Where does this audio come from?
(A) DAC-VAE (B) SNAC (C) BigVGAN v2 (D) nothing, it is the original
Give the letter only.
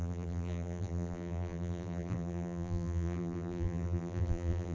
C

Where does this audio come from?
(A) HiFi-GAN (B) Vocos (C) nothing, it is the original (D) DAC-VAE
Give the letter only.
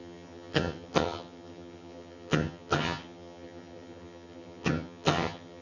A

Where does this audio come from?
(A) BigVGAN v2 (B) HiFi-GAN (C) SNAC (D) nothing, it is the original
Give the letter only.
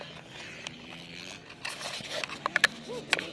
D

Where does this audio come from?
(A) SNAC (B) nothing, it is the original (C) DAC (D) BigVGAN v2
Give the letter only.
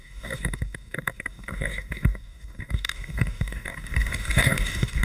C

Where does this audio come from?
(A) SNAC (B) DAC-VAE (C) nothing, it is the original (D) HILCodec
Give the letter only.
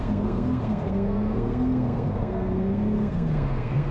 A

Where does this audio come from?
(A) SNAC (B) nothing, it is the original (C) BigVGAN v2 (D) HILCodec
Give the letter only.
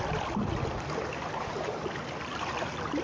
B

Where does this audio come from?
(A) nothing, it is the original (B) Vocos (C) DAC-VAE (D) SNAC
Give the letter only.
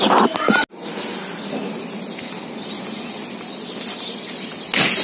A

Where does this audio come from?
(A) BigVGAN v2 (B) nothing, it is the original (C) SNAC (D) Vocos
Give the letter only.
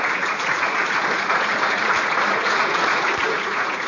D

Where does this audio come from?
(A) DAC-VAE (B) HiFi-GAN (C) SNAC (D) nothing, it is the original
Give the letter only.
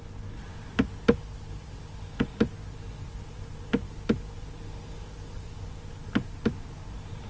D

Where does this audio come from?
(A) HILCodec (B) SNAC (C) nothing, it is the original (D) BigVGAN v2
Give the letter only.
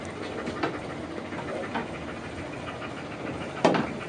C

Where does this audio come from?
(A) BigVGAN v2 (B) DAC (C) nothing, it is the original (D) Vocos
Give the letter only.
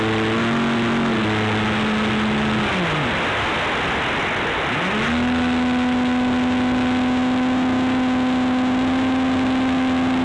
C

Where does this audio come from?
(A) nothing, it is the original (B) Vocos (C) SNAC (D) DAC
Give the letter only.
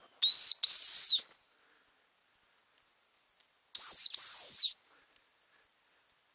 A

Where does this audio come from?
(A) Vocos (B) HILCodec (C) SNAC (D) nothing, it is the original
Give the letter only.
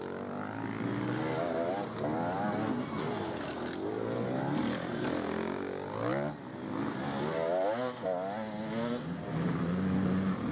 D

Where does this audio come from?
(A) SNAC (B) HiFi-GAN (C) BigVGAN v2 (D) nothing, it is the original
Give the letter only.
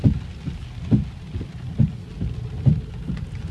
D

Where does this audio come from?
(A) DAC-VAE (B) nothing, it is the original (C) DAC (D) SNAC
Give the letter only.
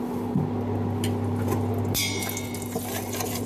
B